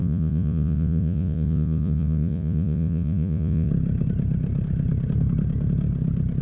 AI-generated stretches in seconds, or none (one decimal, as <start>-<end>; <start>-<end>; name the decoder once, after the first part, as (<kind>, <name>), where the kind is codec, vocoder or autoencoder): 0.0-3.7 (vocoder, Vocos)